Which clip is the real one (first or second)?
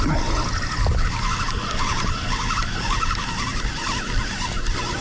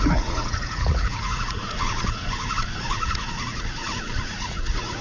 first